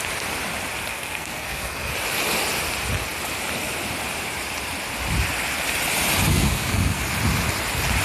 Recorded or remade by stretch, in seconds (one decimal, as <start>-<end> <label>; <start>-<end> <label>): 0.0-0.9 recorded; 0.9-1.9 remade; 1.9-6.3 recorded; 6.3-7.0 remade; 7.0-8.0 recorded